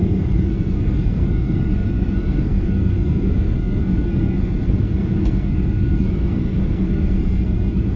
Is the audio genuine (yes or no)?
no